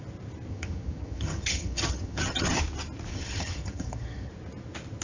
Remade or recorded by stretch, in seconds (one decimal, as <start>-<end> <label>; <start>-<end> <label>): 0.0-0.5 recorded; 0.5-2.6 remade; 2.6-3.1 recorded; 3.1-4.3 remade; 4.3-5.0 recorded